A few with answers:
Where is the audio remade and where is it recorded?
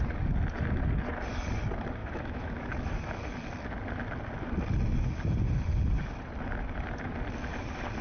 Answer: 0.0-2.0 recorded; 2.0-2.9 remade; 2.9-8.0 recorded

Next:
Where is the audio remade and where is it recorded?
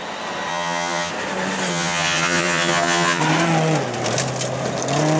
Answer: 0.0-0.5 recorded; 0.5-1.1 remade; 1.1-1.7 recorded; 1.7-3.2 remade; 3.2-5.2 recorded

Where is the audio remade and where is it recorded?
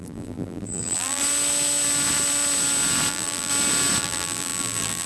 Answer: 0.0-1.2 remade; 1.2-3.1 recorded; 3.1-3.5 remade; 3.5-4.0 recorded; 4.0-5.1 remade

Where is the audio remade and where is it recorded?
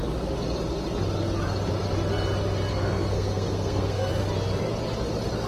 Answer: 0.0-2.7 recorded; 2.7-4.1 remade; 4.1-5.5 recorded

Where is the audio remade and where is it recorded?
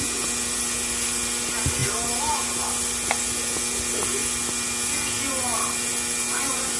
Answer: 0.0-6.8 recorded